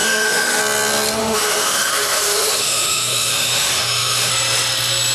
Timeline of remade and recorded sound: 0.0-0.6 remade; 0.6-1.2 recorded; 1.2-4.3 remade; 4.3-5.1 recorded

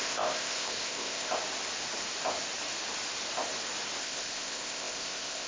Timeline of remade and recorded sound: 0.0-1.3 remade; 1.3-4.0 recorded; 4.0-5.5 remade

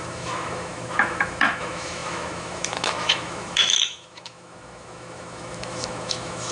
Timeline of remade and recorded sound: 0.0-6.5 remade

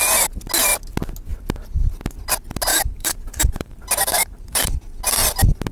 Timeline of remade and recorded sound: 0.0-2.7 recorded; 2.7-4.7 remade; 4.7-5.7 recorded

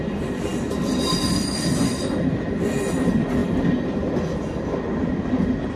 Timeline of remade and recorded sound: 0.0-5.8 recorded